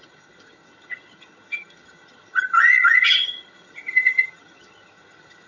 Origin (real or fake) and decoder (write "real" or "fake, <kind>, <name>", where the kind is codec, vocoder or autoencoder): fake, vocoder, HiFi-GAN